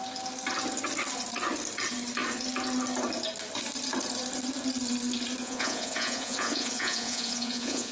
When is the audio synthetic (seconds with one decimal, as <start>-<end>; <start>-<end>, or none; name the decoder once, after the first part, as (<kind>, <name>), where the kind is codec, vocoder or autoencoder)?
5.4-7.9 (vocoder, Vocos)